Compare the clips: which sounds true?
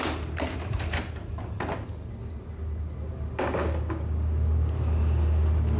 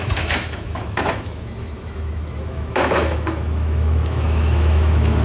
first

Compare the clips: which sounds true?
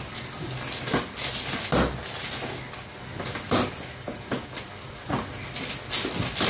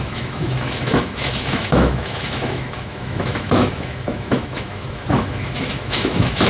first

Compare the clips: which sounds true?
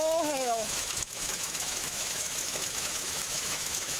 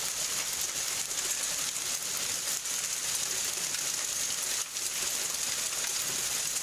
second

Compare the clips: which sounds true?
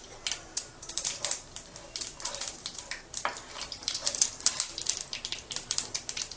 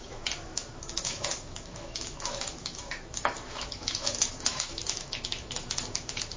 first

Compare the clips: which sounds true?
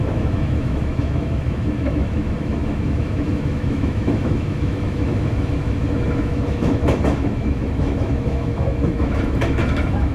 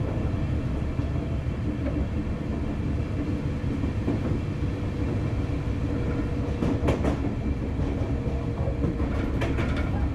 second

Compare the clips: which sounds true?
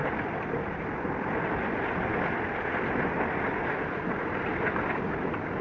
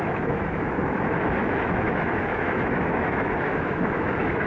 first